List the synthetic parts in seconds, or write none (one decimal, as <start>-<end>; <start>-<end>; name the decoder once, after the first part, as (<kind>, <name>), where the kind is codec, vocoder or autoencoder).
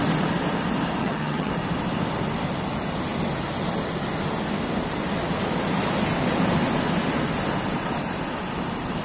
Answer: 1.0-1.5 (vocoder, HiFi-GAN)